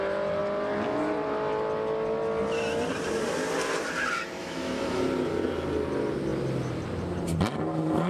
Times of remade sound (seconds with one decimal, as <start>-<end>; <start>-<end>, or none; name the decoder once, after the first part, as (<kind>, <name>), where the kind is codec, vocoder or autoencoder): 4.4-5.0 (autoencoder, DAC-VAE)